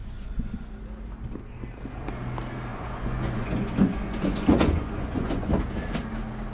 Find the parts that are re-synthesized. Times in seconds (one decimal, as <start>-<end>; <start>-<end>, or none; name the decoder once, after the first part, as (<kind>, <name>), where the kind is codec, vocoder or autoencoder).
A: 0.0-0.7 (vocoder, Vocos); 2.7-5.5